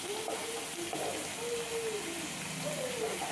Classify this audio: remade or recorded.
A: recorded